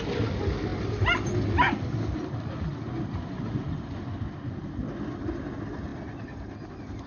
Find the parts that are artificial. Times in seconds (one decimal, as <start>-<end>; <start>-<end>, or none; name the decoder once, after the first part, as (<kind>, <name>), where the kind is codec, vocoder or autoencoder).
none